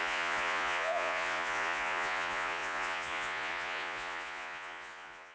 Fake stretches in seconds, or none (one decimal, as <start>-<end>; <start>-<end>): 0.0-5.3